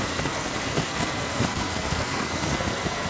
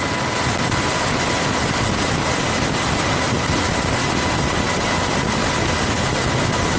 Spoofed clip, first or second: first